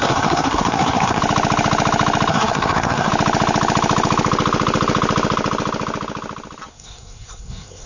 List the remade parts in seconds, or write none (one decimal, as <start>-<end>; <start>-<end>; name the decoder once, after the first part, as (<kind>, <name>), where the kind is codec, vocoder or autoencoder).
0.0-1.2 (codec, SNAC); 2.3-3.1; 6.7-7.9

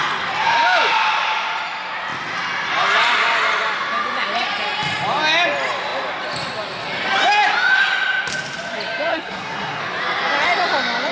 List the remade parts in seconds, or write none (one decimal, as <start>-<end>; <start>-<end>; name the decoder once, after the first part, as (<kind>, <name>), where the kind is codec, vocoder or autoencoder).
9.1-9.8 (codec, SNAC)

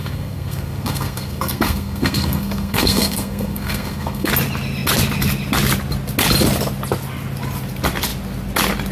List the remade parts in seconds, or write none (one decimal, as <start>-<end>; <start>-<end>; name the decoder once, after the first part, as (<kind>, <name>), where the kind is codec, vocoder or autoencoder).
0.0-4.3 (codec, SNAC)

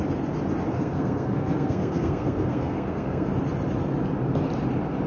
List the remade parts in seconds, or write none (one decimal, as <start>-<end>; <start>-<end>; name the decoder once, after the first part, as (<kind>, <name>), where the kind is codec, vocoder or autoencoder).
0.7-3.3 (codec, SNAC)

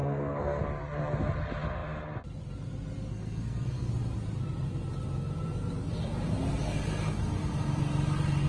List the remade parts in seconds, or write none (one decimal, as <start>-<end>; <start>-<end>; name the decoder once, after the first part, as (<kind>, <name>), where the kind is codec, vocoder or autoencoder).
0.0-0.6 (codec, SNAC); 3.1-3.9